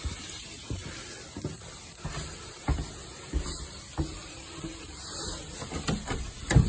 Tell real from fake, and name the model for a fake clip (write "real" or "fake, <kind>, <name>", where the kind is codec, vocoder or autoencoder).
real